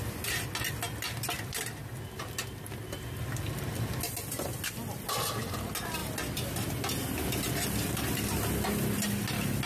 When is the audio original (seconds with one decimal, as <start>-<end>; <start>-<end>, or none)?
0.0-9.7